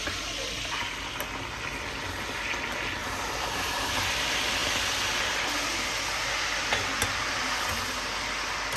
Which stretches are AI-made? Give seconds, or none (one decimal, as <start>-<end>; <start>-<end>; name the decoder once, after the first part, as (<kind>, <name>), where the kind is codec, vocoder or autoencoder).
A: 3.0-3.9 (vocoder, BigVGAN v2)